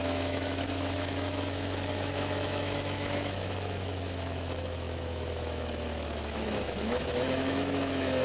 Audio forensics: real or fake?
fake